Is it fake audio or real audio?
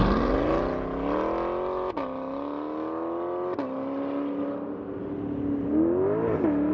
real